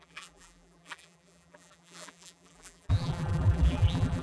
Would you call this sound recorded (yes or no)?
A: no